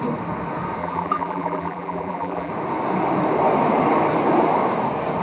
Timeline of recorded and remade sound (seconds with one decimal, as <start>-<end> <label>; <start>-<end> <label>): 0.0-0.8 recorded; 0.8-2.5 remade; 2.5-5.2 recorded